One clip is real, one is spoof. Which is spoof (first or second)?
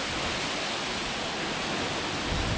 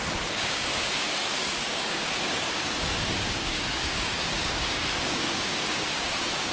second